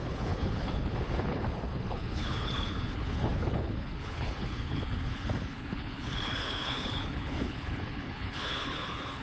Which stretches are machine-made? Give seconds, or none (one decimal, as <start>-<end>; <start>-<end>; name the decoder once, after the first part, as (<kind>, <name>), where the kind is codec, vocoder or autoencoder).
0.0-9.2 (codec, HILCodec)